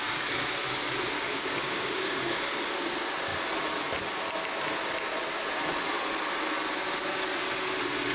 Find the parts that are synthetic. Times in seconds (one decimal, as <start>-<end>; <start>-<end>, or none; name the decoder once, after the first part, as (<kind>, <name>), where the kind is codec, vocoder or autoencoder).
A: 1.3-2.6 (codec, DAC)

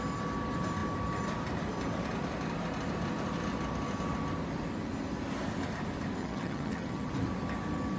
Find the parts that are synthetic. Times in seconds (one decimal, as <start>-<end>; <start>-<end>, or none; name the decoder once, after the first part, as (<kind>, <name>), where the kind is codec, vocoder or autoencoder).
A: 6.2-7.1 (vocoder, HiFi-GAN)

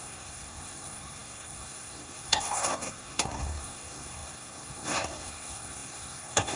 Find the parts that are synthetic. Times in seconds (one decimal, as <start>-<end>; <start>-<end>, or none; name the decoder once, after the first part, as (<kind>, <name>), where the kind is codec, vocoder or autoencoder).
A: 0.0-6.6 (codec, SNAC)

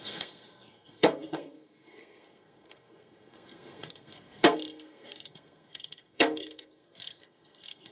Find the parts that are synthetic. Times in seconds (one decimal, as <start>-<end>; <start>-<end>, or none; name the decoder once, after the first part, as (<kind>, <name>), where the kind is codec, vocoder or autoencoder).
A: 0.0-7.9 (codec, SNAC)